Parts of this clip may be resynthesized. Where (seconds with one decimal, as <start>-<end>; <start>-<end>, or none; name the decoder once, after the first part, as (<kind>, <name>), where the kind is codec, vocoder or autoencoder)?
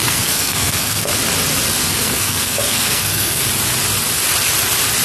0.0-1.1 (codec, SNAC); 1.8-3.4